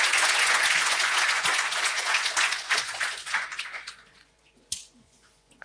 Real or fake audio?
fake